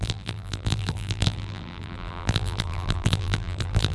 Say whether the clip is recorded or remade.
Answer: remade